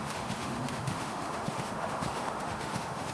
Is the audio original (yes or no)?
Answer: no